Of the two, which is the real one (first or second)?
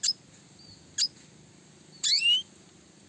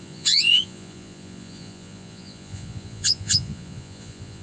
first